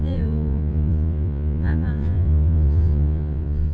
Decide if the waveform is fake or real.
fake